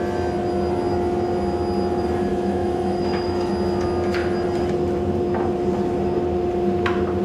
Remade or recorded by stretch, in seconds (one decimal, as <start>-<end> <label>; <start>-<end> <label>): 0.0-2.3 recorded; 2.3-3.5 remade; 3.5-7.2 recorded